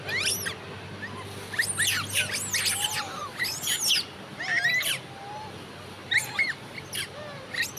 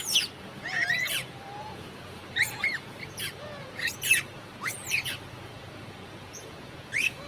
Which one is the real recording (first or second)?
first